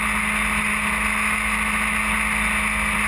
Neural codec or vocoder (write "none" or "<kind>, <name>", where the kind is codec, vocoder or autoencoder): none